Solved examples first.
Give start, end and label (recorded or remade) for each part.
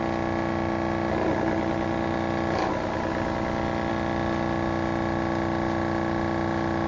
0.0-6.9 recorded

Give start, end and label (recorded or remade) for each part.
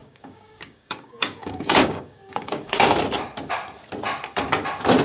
0.0-3.0 remade; 3.0-5.0 recorded